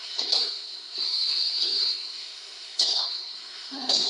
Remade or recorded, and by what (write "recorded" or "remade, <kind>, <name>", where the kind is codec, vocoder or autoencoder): remade, codec, SNAC